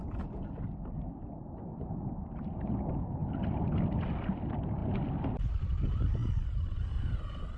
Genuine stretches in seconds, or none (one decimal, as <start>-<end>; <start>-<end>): 0.0-7.6